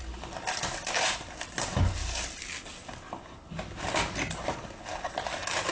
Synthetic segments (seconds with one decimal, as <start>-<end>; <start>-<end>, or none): none